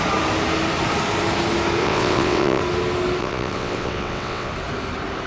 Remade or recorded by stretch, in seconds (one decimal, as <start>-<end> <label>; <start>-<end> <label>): 0.0-1.8 recorded; 1.8-2.6 remade; 2.6-3.2 recorded; 3.2-4.5 remade; 4.5-5.3 recorded